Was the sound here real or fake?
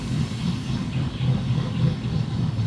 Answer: fake